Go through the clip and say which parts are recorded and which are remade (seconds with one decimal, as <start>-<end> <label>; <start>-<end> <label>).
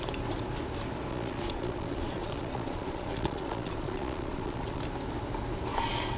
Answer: 0.0-1.1 recorded; 1.1-4.8 remade; 4.8-5.7 recorded; 5.7-6.2 remade